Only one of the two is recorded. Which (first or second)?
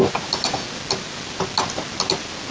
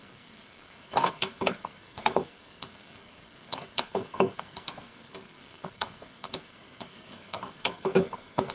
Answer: first